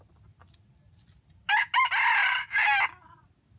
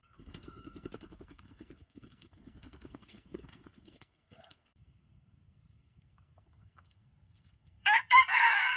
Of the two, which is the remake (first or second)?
second